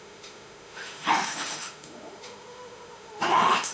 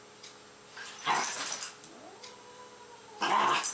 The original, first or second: second